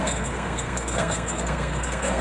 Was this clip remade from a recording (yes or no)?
yes